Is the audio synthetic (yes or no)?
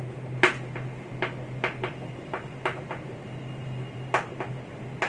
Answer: no